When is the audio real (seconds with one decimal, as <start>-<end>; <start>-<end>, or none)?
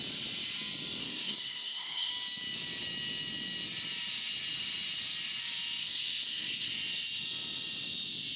0.0-1.0; 2.1-5.8; 6.7-8.4